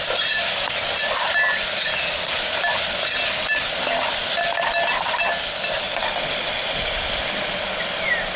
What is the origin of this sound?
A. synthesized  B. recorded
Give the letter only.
B